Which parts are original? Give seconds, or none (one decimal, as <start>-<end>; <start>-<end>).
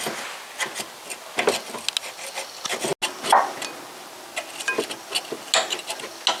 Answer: 0.0-6.4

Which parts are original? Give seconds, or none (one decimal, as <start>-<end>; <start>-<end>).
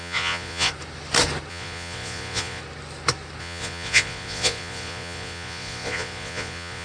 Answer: 0.7-1.5; 2.6-3.4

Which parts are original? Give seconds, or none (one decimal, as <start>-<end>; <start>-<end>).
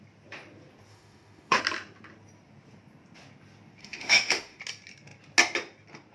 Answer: 0.0-0.9; 1.6-3.8; 4.6-6.1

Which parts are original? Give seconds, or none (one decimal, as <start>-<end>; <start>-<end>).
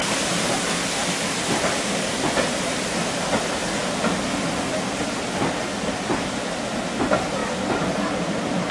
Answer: 0.0-1.0; 2.1-7.4